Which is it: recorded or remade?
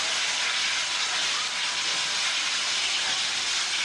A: recorded